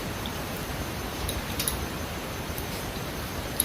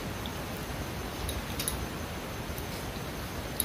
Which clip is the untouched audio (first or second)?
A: second